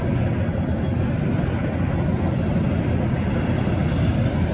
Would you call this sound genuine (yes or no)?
yes